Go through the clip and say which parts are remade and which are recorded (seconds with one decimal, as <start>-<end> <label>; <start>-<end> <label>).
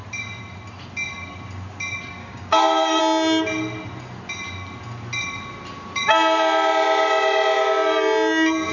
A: 0.0-2.2 recorded; 2.2-3.0 remade; 3.0-8.7 recorded